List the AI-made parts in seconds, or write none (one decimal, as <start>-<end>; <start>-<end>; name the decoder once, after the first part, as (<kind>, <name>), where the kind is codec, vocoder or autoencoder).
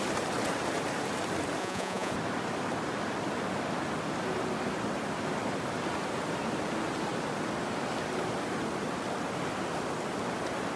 1.6-2.1 (vocoder, Vocos)